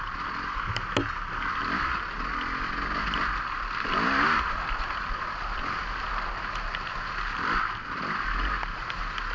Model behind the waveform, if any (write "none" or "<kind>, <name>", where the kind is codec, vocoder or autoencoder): none